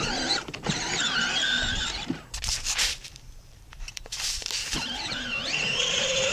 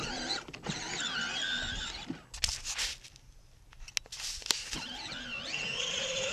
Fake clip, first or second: first